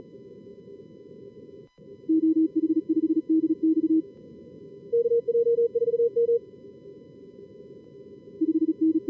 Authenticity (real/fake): real